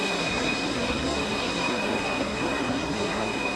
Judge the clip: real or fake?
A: fake